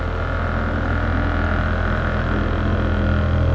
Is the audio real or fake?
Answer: real